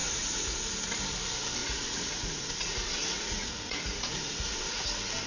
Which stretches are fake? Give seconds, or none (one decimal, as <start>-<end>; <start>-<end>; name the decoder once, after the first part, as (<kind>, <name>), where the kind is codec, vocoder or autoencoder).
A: 0.0-0.6 (vocoder, Vocos); 1.6-4.8